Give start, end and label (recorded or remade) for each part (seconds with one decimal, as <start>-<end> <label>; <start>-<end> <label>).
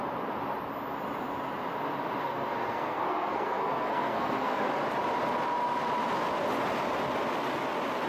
0.0-2.2 recorded; 2.2-4.7 remade; 4.7-8.1 recorded